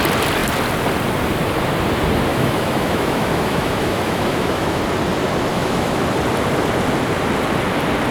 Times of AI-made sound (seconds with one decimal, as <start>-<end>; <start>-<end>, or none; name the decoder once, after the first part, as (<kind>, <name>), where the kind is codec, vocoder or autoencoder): 2.3-4.8 (autoencoder, DAC-VAE); 5.5-6.0